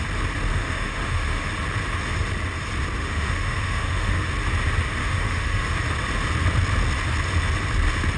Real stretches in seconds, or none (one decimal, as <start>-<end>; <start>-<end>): 0.0-0.5; 1.5-3.0; 4.3-5.0; 5.7-8.2